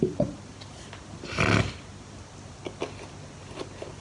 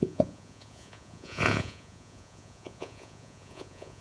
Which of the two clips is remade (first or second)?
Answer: second